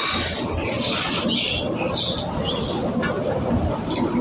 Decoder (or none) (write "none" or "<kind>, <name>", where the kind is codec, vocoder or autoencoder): none